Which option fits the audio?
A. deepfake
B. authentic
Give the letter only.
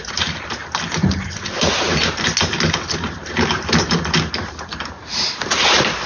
B